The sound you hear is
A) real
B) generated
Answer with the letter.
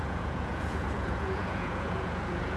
B